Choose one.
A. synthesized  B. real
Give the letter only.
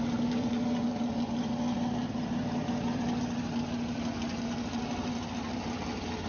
B